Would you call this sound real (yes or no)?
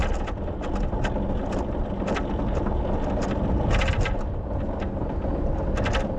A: yes